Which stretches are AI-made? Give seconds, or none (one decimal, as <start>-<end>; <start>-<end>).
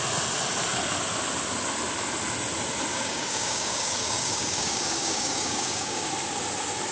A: 2.9-6.1